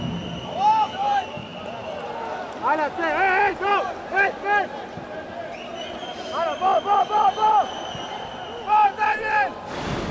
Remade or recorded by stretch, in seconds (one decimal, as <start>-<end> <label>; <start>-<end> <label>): 0.0-10.1 recorded